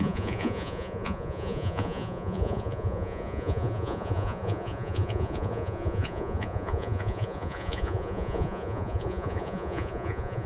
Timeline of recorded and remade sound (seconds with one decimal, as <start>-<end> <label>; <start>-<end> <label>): 0.0-10.5 remade